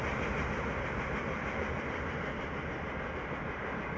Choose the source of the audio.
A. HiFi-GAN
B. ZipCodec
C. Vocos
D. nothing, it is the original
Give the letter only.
D